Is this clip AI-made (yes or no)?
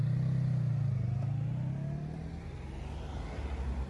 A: no